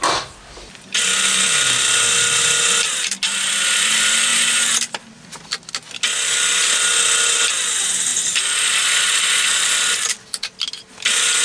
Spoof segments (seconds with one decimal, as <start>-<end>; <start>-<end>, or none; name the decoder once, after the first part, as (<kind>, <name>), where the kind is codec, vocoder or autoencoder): none